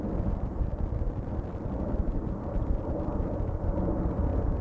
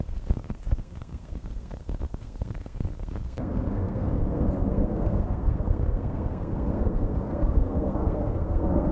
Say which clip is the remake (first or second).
second